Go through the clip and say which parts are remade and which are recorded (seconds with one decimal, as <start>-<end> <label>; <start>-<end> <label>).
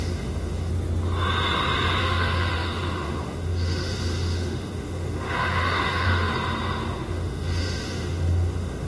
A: 0.0-0.7 remade; 0.7-2.0 recorded; 2.0-6.3 remade; 6.3-7.1 recorded; 7.1-8.9 remade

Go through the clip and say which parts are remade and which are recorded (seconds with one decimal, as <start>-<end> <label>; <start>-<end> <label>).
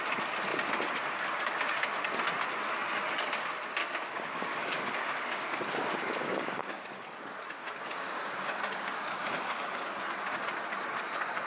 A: 0.0-3.8 recorded; 3.8-7.0 remade; 7.0-7.6 recorded; 7.6-10.4 remade; 10.4-11.5 recorded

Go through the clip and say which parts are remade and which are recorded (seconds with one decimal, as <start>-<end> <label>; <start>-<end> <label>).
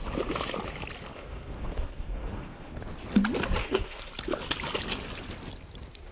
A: 0.0-1.1 recorded; 1.1-2.8 remade; 2.8-3.6 recorded; 3.6-4.1 remade; 4.1-6.1 recorded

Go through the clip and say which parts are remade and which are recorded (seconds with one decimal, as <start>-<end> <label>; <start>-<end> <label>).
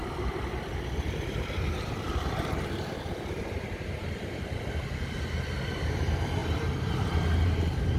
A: 0.0-8.0 recorded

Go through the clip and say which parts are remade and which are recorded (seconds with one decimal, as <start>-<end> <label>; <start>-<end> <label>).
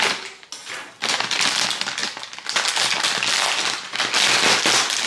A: 0.0-5.1 recorded